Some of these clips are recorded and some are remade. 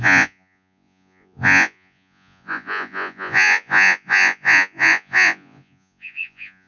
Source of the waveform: remade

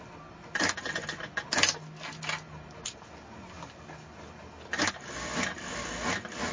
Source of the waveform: recorded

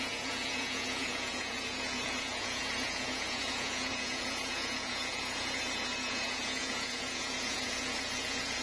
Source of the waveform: remade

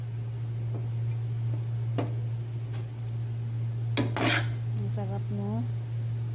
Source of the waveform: recorded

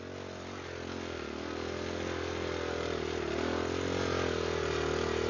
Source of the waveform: recorded